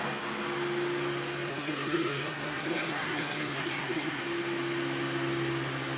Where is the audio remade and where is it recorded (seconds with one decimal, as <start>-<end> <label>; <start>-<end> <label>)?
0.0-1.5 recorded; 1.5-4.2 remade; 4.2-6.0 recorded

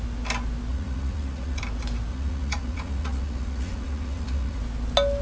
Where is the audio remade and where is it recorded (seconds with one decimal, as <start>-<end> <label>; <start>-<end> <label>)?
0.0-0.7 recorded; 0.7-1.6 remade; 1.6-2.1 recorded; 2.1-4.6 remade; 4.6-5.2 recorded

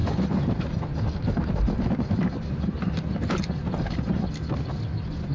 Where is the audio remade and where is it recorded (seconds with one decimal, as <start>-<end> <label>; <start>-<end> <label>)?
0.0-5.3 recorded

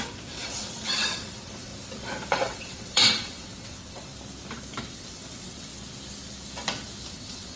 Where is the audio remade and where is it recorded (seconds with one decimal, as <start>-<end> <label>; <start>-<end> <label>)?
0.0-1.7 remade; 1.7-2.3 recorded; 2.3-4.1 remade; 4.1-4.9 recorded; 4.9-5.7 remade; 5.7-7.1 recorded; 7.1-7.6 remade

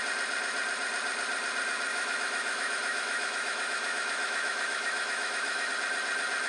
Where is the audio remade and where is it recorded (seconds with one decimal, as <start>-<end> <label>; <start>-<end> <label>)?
0.0-1.9 recorded; 1.9-5.7 remade; 5.7-6.5 recorded

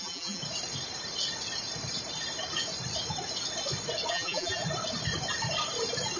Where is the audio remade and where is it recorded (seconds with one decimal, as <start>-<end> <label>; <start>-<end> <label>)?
0.0-0.4 remade; 0.4-4.1 recorded; 4.1-4.6 remade; 4.6-6.2 recorded

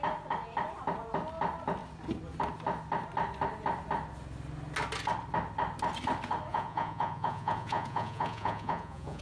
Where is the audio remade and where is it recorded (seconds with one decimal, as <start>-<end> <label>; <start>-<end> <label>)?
0.0-6.5 recorded; 6.5-9.2 remade

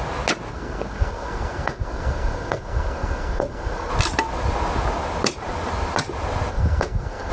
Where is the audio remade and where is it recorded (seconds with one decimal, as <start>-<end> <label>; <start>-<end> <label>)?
0.0-0.5 recorded; 0.5-3.9 remade; 3.9-6.5 recorded; 6.5-7.3 remade